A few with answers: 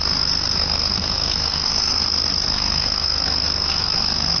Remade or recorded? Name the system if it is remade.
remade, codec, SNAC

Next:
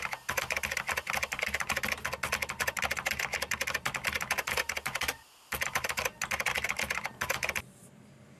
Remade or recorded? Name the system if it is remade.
recorded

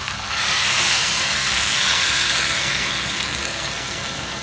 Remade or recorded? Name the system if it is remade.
remade, codec, SNAC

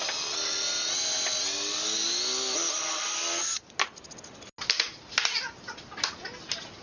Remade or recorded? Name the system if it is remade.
recorded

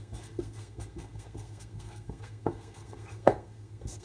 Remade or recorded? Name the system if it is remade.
remade, codec, SNAC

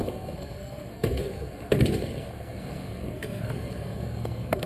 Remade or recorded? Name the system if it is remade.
remade, codec, SNAC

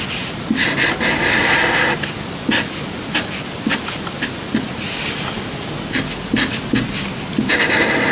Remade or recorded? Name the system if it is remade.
recorded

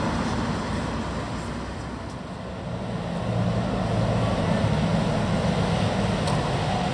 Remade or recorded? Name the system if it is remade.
recorded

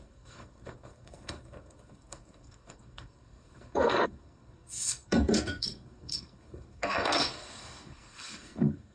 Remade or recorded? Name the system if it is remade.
remade, codec, SNAC